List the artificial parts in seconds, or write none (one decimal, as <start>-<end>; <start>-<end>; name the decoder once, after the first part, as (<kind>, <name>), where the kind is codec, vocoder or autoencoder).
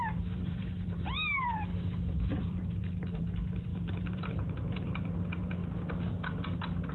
0.0-1.7 (vocoder, BigVGAN v2); 2.4-5.6